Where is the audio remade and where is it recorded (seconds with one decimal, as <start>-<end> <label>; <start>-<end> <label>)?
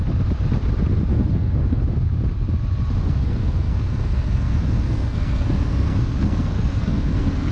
0.0-1.1 recorded; 1.1-1.8 remade; 1.8-3.0 recorded; 3.0-7.5 remade